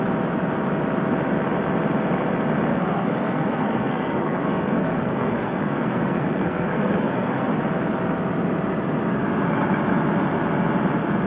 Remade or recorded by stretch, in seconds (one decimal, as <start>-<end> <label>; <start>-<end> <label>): 0.0-2.7 recorded; 2.7-7.6 remade; 7.6-11.3 recorded